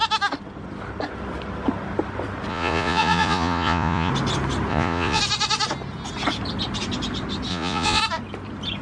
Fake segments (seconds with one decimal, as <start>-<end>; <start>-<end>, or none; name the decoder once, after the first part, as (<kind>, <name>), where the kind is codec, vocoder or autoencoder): 2.5-4.1 (vocoder, Vocos); 4.7-5.2; 7.5-8.0